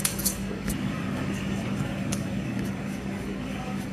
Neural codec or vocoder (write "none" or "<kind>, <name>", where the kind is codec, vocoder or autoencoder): codec, DAC